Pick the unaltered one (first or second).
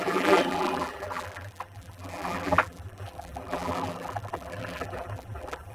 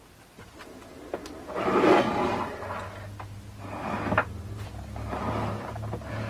second